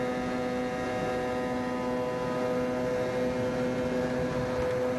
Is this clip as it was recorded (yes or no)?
yes